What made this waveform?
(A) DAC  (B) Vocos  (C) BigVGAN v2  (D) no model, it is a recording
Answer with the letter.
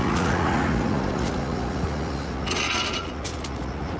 B